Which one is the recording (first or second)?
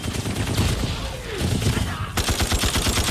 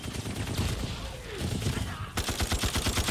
first